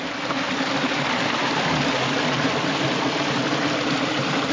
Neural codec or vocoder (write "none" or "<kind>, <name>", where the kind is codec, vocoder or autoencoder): none